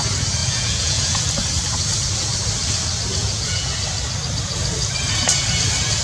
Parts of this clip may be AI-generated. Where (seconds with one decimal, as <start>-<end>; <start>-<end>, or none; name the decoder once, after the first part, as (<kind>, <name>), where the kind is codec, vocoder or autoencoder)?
0.4-1.3 (vocoder, Vocos); 3.2-3.7